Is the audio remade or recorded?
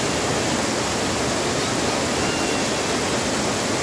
recorded